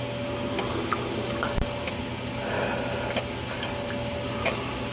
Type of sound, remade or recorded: recorded